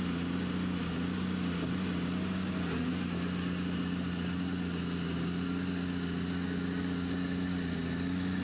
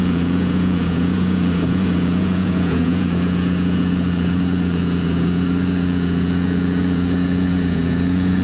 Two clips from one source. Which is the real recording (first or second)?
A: first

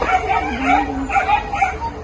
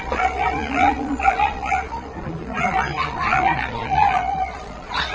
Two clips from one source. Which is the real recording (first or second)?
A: first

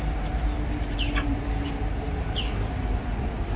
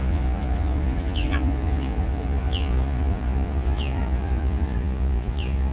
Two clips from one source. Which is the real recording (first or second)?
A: first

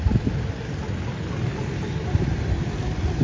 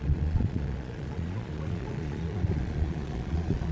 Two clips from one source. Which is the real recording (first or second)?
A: first